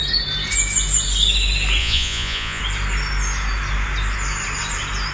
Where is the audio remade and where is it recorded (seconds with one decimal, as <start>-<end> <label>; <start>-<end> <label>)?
0.0-1.8 recorded; 1.8-2.6 remade; 2.6-5.1 recorded